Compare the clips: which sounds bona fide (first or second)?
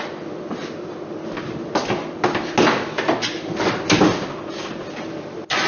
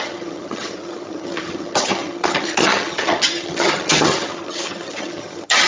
first